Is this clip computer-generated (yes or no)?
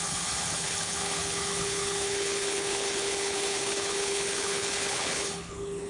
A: yes